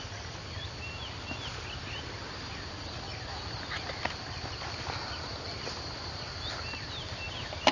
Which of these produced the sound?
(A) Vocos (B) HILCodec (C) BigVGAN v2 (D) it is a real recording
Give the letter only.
D